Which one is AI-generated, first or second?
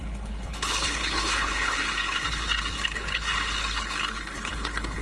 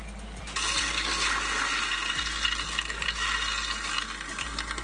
first